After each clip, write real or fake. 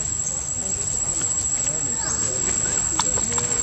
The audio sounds real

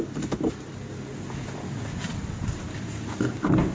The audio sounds real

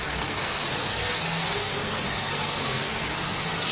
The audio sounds fake